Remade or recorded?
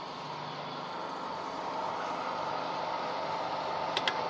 recorded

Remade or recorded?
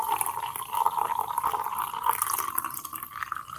recorded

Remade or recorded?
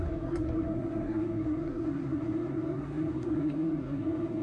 remade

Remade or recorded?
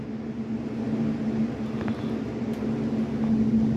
recorded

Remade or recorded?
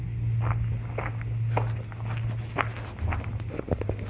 recorded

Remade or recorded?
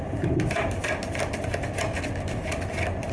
recorded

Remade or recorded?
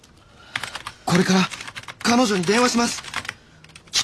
recorded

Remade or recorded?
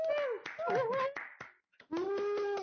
recorded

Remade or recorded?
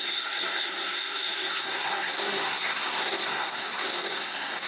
remade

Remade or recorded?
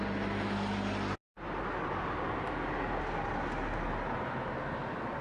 recorded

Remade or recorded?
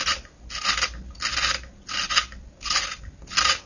recorded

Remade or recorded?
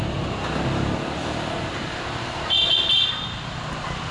recorded